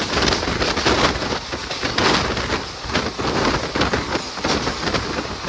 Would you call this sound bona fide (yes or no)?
yes